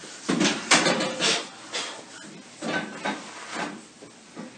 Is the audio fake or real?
real